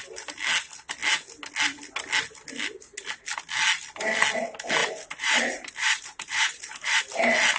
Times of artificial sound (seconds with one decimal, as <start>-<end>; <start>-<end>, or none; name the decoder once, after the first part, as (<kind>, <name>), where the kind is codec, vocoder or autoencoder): 4.8-7.0 (vocoder, BigVGAN v2)